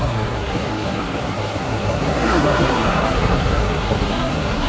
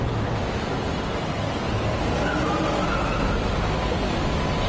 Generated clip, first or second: first